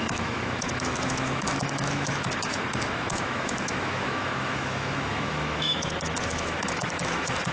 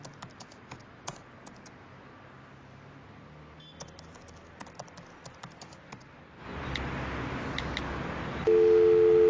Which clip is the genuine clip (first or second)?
second